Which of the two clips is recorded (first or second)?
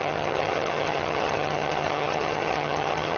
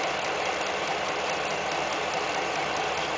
second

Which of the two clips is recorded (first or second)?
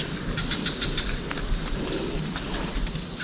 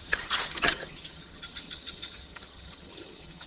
first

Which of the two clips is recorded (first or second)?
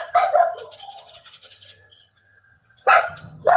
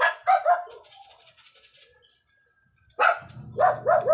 second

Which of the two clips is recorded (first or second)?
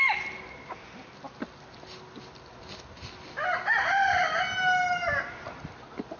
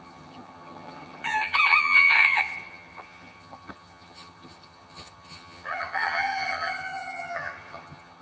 first